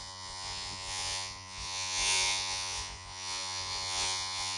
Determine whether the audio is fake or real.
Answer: fake